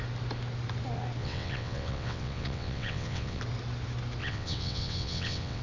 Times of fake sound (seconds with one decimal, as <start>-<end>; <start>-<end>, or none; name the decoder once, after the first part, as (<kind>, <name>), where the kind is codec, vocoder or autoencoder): 1.2-3.4 (vocoder, WaveNeXt); 4.2-5.6